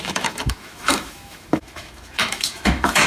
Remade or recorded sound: remade